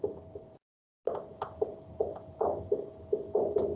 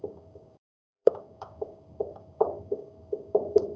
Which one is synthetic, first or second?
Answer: second